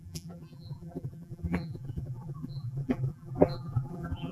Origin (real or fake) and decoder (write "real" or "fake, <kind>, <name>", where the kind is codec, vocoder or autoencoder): fake, vocoder, BigVGAN v2